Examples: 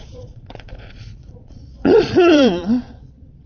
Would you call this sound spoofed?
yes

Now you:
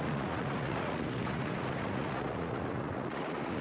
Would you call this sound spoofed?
yes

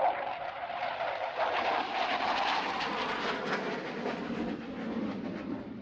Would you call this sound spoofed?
no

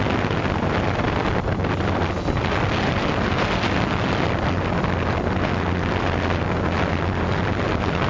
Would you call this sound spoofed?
no